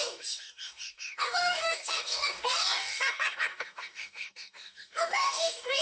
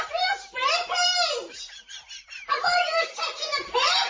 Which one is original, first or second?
second